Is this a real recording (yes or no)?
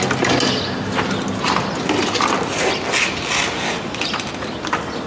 yes